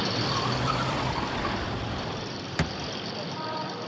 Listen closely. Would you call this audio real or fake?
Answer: fake